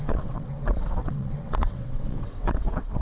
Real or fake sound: fake